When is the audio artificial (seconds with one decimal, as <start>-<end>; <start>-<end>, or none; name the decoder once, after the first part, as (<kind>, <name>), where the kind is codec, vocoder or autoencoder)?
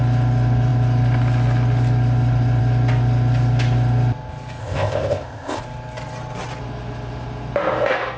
4.6-5.6 (codec, ZipCodec)